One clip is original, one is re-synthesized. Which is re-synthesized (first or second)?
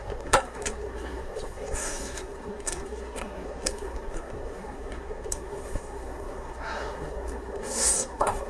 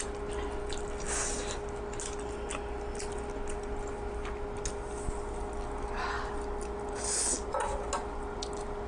first